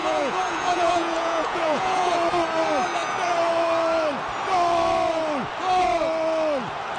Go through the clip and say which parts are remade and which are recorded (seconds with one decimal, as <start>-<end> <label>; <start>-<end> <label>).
0.0-2.1 remade; 2.1-7.0 recorded